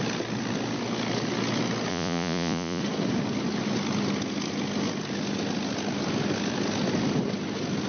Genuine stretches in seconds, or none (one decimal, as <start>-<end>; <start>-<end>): 0.0-1.9; 2.8-7.9